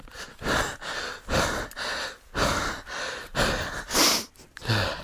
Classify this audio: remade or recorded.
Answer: recorded